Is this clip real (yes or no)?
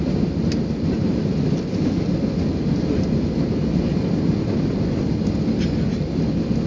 yes